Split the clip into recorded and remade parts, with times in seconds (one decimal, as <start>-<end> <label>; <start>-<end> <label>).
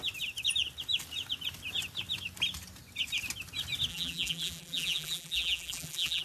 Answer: 0.0-3.9 recorded; 3.9-6.2 remade